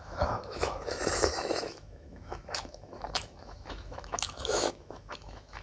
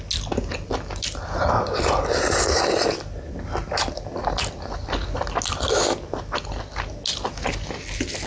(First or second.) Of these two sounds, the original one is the second